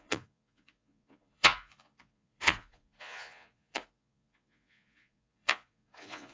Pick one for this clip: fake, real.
fake